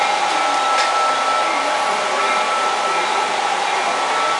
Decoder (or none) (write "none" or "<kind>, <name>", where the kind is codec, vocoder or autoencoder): none